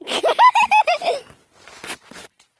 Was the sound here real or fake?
fake